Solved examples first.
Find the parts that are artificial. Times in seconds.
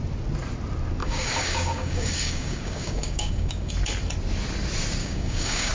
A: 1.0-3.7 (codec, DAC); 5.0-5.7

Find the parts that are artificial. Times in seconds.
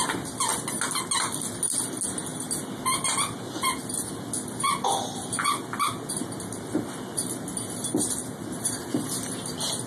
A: none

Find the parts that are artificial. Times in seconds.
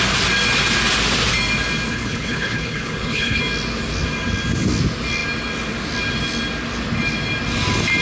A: 1.9-3.4 (codec, HILCodec)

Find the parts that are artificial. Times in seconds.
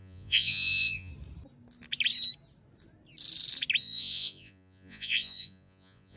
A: 0.0-1.1 (vocoder, Vocos); 3.8-6.2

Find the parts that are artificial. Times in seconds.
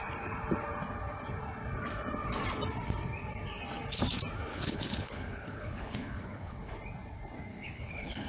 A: 4.5-6.7 (codec, HILCodec); 7.5-8.3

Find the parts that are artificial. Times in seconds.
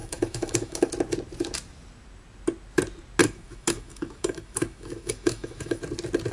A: 0.0-0.9 (autoencoder, DAC-VAE); 3.2-5.8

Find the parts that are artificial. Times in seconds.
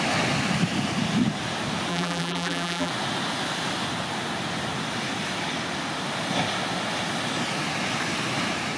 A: 1.9-2.9 (vocoder, BigVGAN v2)